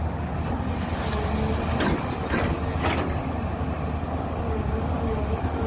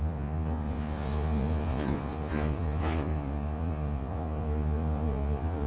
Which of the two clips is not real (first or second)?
second